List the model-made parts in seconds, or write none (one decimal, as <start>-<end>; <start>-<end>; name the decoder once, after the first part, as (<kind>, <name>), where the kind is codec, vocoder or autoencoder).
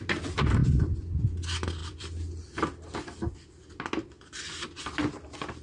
0.6-1.2 (vocoder, BigVGAN v2); 1.8-2.6